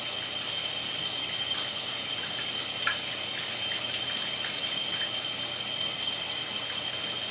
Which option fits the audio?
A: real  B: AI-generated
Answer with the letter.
A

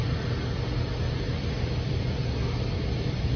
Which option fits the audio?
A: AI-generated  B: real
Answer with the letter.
B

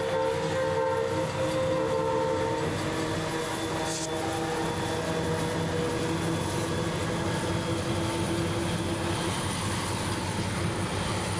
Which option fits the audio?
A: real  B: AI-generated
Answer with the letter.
A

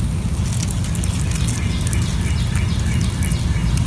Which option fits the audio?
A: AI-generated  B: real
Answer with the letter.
B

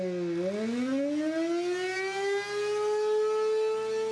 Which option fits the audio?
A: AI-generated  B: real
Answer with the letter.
B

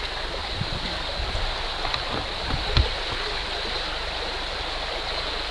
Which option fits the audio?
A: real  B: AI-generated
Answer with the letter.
A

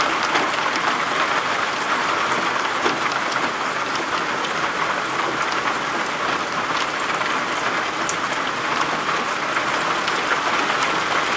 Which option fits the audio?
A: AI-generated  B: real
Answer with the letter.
B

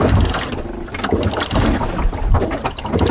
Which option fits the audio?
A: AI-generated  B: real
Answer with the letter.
B